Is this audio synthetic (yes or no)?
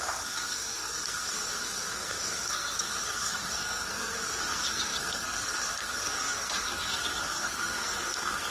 yes